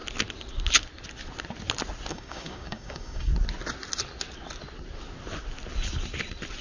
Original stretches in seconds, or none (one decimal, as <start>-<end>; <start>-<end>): 0.0-2.1; 3.3-6.6

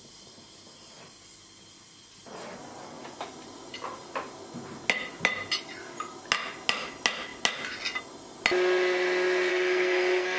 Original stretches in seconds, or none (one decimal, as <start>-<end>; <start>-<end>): 0.0-9.5

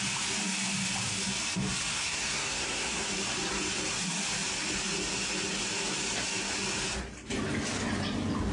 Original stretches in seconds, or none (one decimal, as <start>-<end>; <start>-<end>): 0.0-1.9; 3.1-8.5

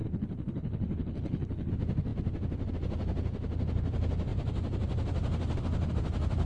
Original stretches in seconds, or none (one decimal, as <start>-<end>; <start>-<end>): 1.7-6.5

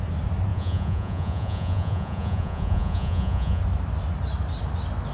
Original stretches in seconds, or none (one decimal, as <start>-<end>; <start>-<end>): 0.0-0.5; 3.6-5.1

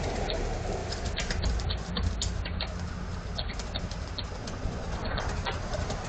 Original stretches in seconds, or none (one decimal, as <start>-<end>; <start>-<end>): 0.0-4.4; 5.2-6.1

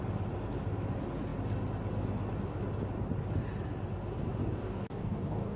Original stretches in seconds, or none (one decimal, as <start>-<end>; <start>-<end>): 0.0-4.4

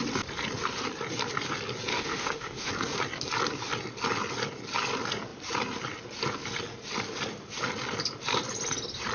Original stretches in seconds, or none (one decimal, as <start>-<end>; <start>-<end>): 0.0-1.9; 2.7-9.1